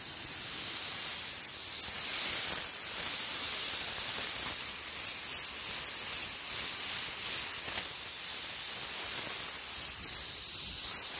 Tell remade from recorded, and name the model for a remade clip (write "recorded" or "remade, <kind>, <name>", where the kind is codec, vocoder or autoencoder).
recorded